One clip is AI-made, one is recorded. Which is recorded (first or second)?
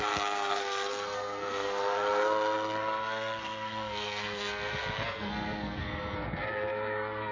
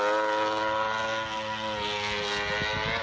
second